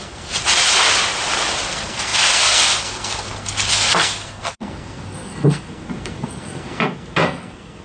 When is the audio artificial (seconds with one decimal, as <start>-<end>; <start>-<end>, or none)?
0.0-0.4; 1.7-7.8